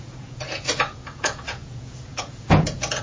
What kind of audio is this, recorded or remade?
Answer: remade